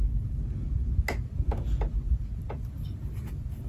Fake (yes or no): no